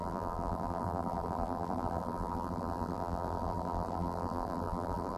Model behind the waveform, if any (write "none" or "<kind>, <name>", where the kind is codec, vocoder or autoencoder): vocoder, BigVGAN v2